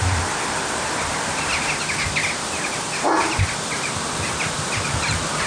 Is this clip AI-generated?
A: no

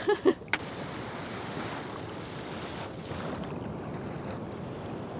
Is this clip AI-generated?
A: no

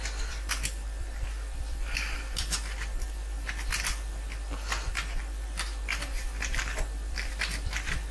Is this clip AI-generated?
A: yes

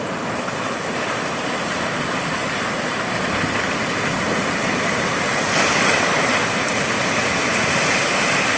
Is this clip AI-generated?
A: yes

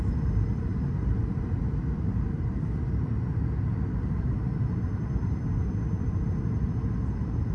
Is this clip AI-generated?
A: yes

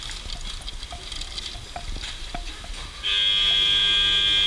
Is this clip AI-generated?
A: no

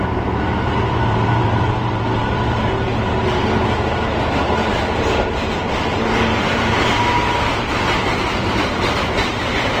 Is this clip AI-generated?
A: yes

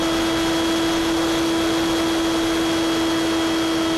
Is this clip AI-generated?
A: no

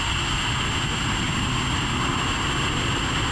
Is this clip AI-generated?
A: no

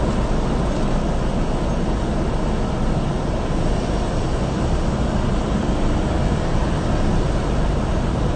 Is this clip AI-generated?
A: no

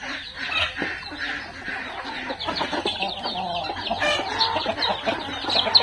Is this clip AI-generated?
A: no